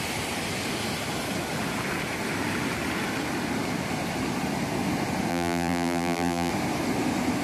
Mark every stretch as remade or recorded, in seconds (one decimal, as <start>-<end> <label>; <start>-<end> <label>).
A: 0.0-5.3 recorded; 5.3-6.5 remade; 6.5-7.4 recorded